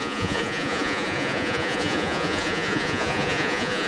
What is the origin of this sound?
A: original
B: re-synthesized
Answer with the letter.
B